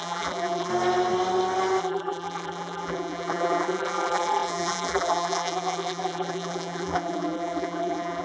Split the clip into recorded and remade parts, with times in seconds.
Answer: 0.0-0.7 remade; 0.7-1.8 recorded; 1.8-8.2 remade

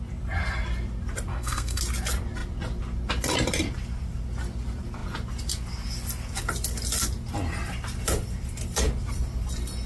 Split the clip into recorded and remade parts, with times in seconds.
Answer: 0.0-1.3 recorded; 1.3-1.8 remade; 1.8-9.9 recorded

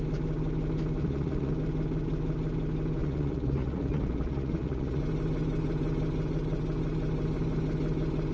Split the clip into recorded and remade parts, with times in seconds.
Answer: 0.0-1.0 recorded; 1.0-1.5 remade; 1.5-3.0 recorded; 3.0-5.0 remade; 5.0-8.3 recorded